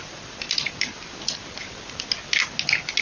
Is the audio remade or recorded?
recorded